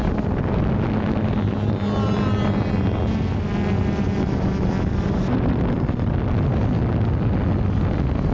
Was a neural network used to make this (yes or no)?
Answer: no